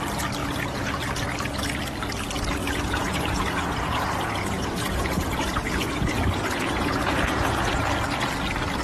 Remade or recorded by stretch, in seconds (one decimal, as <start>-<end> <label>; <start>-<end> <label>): 0.0-0.4 recorded; 0.4-0.9 remade; 0.9-2.6 recorded; 2.6-7.8 remade; 7.8-8.8 recorded